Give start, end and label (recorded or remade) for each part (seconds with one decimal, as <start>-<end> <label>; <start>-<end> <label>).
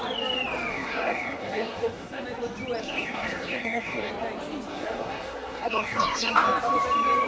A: 0.0-0.7 recorded; 0.7-2.2 remade; 2.2-2.8 recorded; 2.8-4.1 remade; 4.1-4.7 recorded; 4.7-6.3 remade; 6.3-7.3 recorded